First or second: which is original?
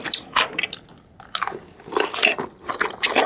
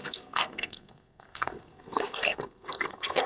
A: first